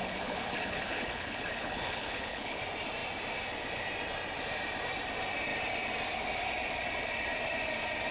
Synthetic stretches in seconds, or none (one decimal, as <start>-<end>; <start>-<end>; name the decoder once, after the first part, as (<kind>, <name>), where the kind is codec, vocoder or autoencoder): 0.0-2.6 (codec, HILCodec)